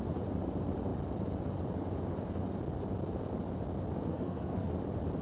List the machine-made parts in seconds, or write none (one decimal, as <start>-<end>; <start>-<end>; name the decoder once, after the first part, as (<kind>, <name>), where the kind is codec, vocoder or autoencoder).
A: 4.1-4.7 (codec, SNAC)